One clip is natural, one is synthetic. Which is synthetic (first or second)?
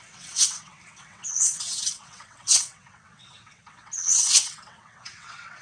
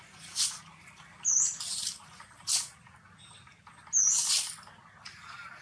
first